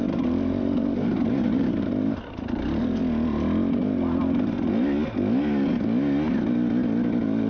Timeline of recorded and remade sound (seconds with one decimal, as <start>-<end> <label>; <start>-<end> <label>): 0.0-3.0 remade; 3.0-7.5 recorded